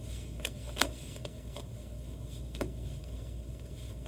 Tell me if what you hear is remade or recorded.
remade